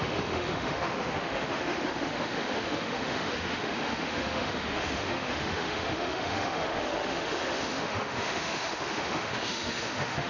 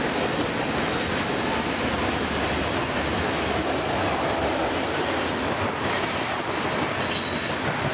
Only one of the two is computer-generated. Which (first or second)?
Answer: first